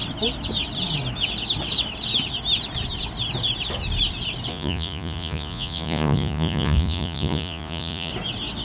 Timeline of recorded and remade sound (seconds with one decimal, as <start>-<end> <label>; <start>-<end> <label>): 0.0-4.5 recorded; 4.5-8.1 remade; 8.1-8.6 recorded